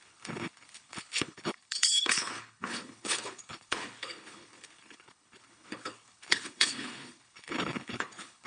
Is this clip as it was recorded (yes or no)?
no